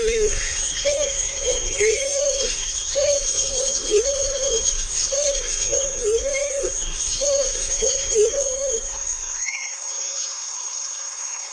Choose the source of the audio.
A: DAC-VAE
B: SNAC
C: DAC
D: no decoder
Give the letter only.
B